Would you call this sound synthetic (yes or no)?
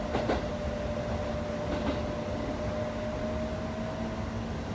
no